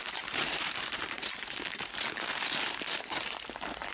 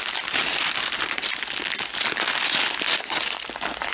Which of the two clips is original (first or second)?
second